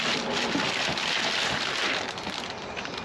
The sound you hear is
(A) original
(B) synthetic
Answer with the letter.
A